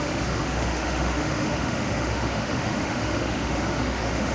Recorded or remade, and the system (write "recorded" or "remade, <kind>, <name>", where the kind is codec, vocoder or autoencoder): remade, autoencoder, DAC-VAE